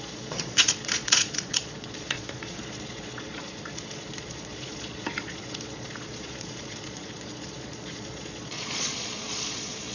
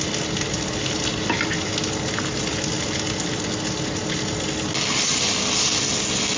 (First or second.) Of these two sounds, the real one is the second